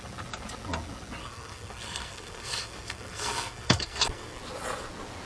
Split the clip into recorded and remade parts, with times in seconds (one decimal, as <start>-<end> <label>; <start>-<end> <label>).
0.0-1.2 recorded; 1.2-4.4 remade; 4.4-5.3 recorded